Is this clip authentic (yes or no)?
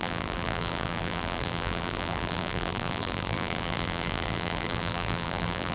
no